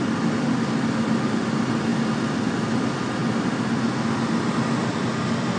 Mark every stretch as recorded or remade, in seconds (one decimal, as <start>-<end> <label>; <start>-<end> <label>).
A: 0.0-5.6 recorded